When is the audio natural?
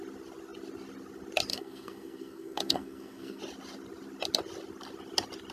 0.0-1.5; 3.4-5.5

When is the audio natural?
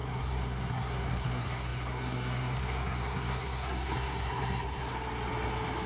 4.9-5.9